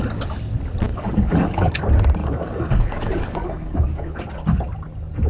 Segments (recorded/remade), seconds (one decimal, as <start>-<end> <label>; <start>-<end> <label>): 0.0-0.9 recorded; 0.9-1.7 remade; 1.7-2.2 recorded; 2.2-4.2 remade; 4.2-5.3 recorded